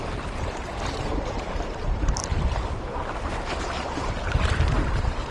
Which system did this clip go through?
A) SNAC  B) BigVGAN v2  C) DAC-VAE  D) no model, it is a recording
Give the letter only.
B